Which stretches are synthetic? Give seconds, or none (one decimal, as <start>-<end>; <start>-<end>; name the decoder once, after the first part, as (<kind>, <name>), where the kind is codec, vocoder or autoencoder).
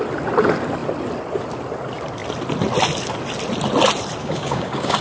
4.2-5.0 (codec, DAC)